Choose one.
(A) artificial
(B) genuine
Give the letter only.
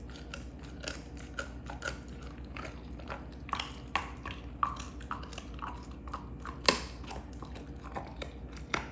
B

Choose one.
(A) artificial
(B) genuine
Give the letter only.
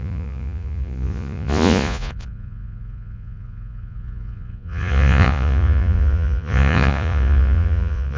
A